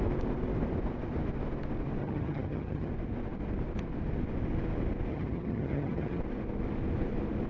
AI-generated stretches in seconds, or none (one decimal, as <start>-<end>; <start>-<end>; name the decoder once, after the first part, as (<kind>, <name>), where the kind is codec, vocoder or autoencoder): 2.0-2.9 (vocoder, HiFi-GAN); 5.1-6.2